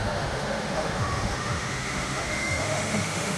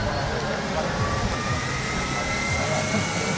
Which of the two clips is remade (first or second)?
first